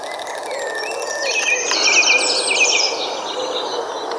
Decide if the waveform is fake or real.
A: real